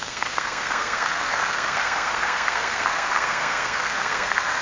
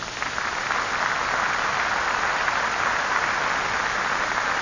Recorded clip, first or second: second